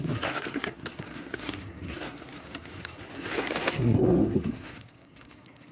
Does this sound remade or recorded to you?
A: remade